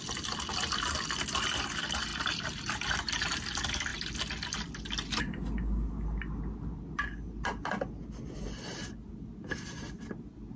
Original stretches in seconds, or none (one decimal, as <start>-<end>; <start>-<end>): 0.0-2.1; 3.4-10.6